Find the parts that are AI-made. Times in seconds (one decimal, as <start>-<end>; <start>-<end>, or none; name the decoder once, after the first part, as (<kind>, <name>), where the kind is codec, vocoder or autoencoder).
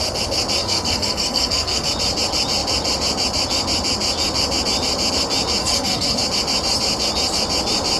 0.6-1.9 (codec, SNAC); 5.6-6.2